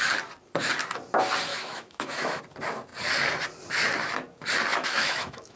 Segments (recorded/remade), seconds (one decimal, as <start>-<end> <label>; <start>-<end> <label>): 0.0-1.5 recorded; 1.5-2.4 remade; 2.4-4.7 recorded; 4.7-5.6 remade